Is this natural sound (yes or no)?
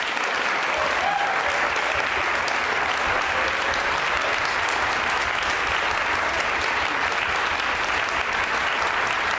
yes